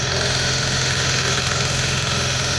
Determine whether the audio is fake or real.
fake